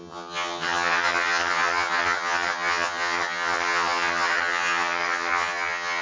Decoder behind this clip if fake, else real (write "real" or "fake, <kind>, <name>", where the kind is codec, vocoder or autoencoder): fake, vocoder, HiFi-GAN